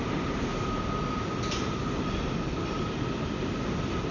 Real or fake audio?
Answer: real